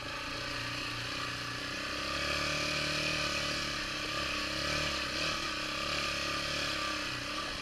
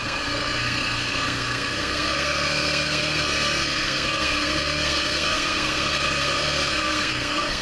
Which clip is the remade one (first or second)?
second